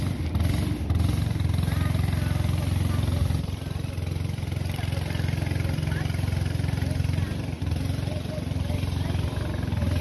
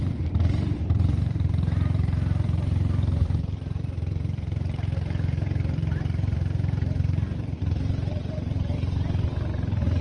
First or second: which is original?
first